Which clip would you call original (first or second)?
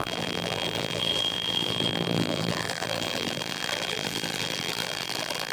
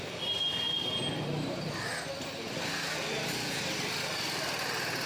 second